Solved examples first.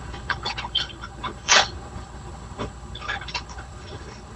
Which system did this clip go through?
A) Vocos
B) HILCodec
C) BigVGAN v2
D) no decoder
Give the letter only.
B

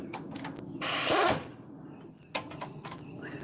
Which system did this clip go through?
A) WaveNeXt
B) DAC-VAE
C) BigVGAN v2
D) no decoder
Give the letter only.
D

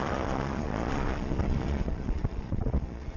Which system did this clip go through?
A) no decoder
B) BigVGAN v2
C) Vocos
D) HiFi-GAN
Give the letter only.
C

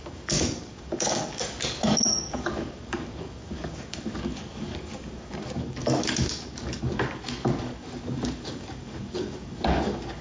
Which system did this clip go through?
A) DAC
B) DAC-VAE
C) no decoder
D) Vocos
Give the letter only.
A